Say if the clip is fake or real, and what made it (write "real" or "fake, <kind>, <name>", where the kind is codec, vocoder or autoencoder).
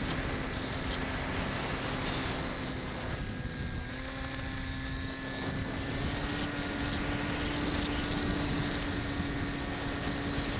real